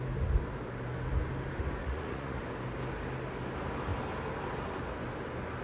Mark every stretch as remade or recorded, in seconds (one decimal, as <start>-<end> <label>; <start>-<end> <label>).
0.0-1.8 recorded; 1.8-2.4 remade; 2.4-5.6 recorded